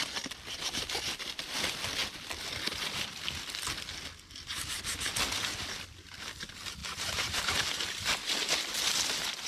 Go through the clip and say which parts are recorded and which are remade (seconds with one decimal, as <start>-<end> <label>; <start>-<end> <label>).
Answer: 0.0-6.8 recorded; 6.8-7.4 remade; 7.4-9.5 recorded